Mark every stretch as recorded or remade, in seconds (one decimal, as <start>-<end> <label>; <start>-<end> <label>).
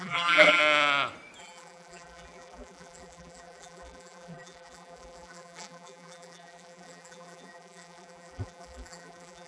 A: 0.0-0.6 remade; 0.6-1.4 recorded; 1.4-9.5 remade